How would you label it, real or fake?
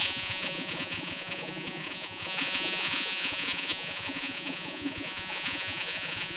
fake